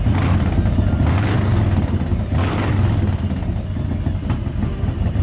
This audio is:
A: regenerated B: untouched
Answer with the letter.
B